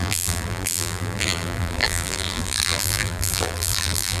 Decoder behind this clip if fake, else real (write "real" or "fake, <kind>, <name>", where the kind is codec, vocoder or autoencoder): fake, vocoder, BigVGAN v2